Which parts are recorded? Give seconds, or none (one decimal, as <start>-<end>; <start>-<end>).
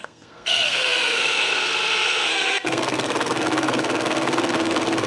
none